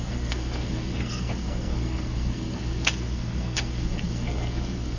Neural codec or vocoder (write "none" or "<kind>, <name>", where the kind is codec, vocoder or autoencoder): codec, SNAC